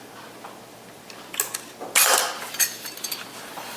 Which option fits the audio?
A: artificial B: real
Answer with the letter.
B